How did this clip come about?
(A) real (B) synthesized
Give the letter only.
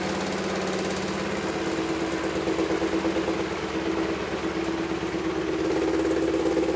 A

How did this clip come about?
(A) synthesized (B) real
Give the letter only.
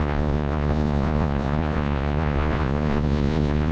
A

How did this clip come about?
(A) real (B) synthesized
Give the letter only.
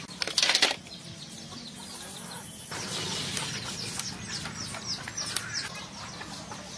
A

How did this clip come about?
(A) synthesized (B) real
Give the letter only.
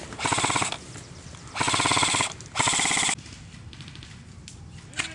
B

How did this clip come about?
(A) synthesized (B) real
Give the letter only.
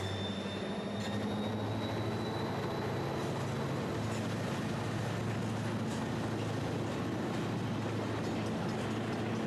B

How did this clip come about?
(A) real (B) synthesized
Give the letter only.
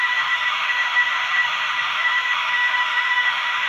B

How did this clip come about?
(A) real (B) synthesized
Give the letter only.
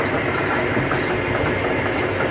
A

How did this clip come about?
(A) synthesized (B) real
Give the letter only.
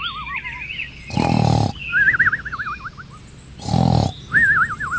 B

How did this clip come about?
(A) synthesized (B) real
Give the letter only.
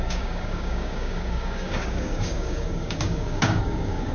A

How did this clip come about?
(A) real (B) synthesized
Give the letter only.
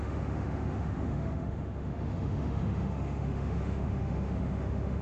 B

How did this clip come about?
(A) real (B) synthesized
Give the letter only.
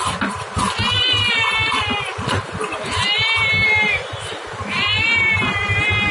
A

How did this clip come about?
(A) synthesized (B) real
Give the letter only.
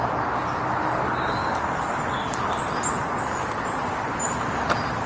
B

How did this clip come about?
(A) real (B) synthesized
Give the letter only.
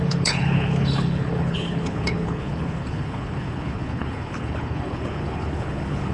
B